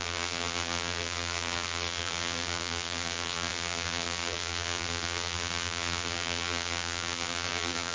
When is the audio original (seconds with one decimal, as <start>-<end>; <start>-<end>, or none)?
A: none